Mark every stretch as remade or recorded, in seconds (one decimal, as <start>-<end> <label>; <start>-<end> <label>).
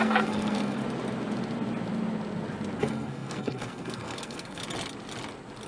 0.0-0.8 remade; 0.8-2.8 recorded; 2.8-4.6 remade; 4.6-5.7 recorded